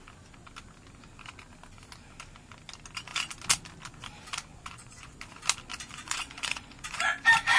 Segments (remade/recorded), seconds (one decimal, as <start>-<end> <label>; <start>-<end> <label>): 0.0-4.5 recorded; 4.5-5.2 remade; 5.2-5.7 recorded; 5.7-7.1 remade; 7.1-7.6 recorded